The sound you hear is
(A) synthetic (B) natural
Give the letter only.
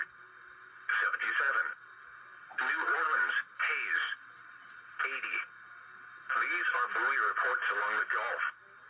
B